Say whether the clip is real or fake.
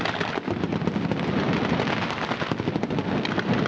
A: real